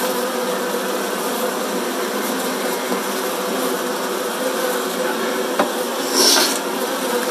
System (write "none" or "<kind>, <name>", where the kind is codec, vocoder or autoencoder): none